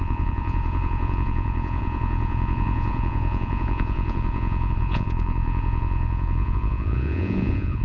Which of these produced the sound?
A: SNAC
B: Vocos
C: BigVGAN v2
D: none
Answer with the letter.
B